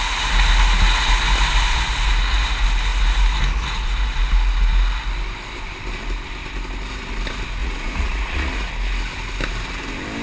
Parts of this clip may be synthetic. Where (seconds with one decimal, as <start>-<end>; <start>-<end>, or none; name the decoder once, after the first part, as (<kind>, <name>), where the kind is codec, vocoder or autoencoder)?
7.6-8.7 (vocoder, Vocos)